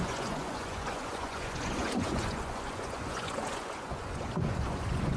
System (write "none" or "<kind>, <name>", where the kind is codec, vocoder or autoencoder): vocoder, Vocos